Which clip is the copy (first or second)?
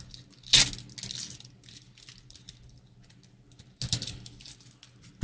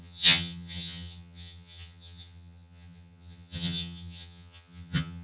second